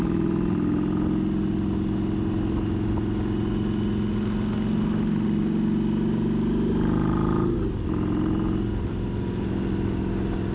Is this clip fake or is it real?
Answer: real